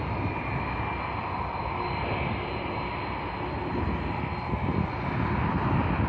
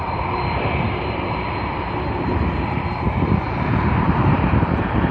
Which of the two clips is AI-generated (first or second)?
second